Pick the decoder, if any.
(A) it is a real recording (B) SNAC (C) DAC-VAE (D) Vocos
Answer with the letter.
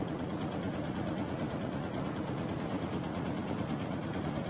D